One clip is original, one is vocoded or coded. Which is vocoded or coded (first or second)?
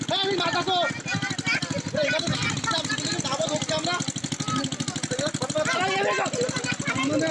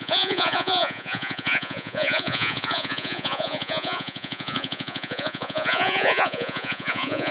second